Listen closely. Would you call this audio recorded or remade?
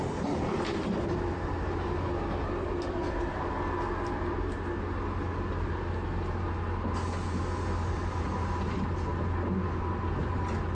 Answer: recorded